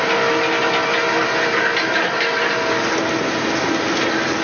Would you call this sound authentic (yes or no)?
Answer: yes